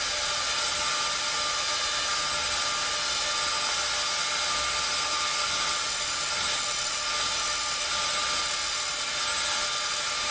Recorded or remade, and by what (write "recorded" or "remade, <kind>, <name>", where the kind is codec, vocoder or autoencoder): recorded